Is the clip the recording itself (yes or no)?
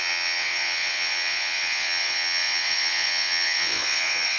no